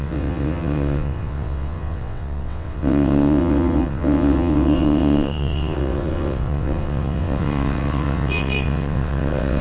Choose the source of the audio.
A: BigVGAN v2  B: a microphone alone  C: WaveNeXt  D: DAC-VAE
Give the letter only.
C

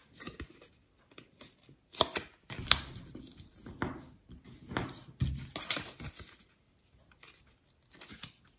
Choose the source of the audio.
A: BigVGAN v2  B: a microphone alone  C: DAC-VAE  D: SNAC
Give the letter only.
B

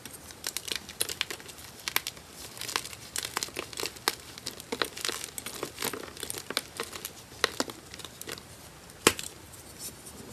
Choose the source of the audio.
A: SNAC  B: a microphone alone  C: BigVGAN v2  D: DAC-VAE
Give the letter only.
B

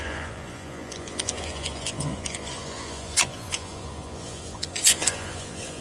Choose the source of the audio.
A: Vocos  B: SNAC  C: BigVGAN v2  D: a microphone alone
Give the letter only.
A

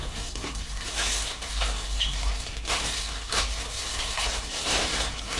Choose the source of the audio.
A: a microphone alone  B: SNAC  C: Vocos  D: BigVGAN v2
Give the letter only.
B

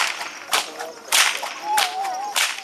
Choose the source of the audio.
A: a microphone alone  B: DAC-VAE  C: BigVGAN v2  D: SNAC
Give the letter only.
A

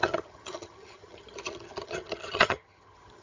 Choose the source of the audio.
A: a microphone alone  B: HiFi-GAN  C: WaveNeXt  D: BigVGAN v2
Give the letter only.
B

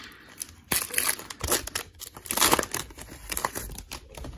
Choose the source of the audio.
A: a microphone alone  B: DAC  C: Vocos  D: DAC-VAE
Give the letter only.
A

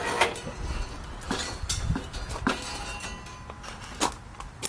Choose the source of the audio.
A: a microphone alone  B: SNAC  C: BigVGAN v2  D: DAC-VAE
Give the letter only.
A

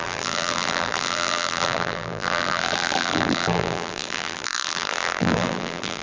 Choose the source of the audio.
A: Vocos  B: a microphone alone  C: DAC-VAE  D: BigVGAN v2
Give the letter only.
D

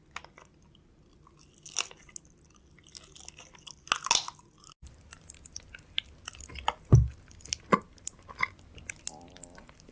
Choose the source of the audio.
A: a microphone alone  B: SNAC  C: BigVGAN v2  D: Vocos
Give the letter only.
A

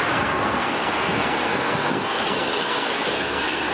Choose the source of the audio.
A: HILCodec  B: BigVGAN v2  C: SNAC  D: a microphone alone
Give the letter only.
C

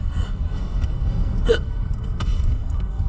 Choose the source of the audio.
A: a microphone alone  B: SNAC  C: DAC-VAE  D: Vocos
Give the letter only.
B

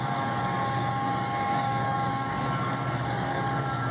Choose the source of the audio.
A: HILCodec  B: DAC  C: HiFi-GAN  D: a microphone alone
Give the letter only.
B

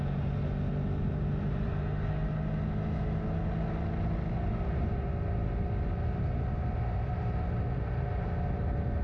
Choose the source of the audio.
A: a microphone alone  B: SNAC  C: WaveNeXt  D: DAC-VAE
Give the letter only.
A